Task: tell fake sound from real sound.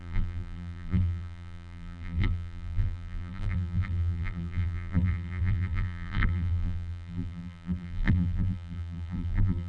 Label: fake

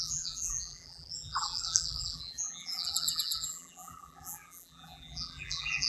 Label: fake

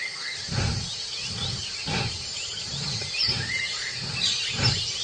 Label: fake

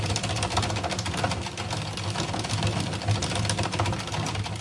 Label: real